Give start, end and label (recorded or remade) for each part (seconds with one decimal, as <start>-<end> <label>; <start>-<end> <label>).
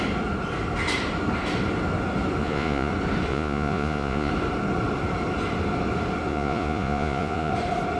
0.0-2.4 recorded; 2.4-2.9 remade; 2.9-3.3 recorded; 3.3-4.3 remade; 4.3-6.3 recorded; 6.3-7.5 remade; 7.5-8.0 recorded